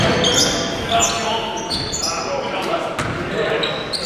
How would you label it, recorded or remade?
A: recorded